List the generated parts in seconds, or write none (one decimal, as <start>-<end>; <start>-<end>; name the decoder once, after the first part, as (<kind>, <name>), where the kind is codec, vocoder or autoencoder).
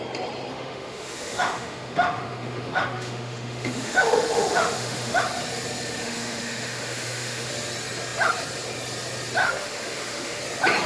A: 0.5-5.2 (autoencoder, DAC-VAE); 6.0-7.5; 9.4-10.4